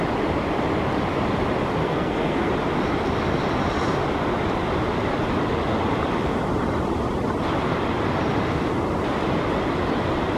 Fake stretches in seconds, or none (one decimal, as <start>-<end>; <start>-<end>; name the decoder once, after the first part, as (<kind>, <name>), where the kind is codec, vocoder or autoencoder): 1.8-2.5 (codec, SNAC)